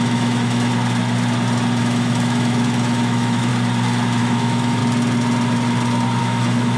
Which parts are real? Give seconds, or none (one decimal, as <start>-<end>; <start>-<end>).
0.7-1.8; 3.5-4.2; 4.8-6.2